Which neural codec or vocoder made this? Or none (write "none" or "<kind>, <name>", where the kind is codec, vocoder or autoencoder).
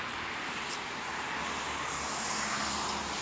none